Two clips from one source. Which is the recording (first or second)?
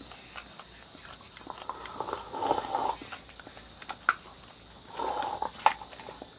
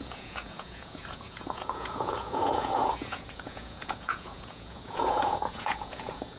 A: first